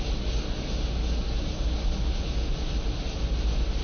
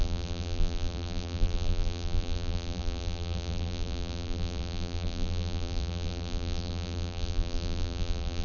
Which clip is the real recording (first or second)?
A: first